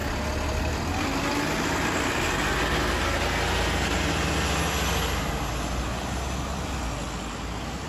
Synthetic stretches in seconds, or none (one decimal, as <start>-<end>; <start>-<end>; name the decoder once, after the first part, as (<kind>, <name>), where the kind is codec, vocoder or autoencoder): none